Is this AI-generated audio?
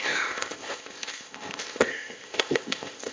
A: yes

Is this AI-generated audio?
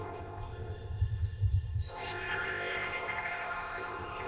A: yes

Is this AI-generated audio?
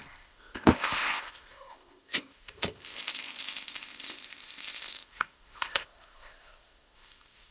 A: yes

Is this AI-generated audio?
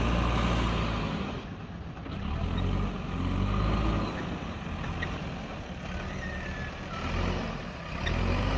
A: no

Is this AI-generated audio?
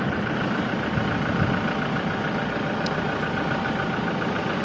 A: no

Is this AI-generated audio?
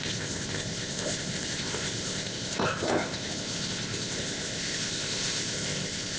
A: yes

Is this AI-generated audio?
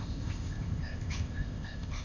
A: yes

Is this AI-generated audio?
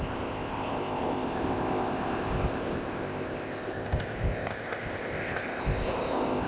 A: yes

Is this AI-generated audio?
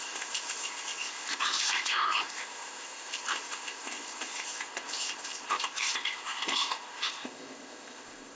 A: yes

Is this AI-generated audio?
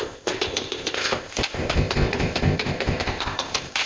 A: yes